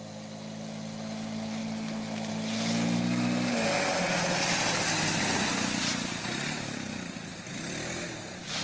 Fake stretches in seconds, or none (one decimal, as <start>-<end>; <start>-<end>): none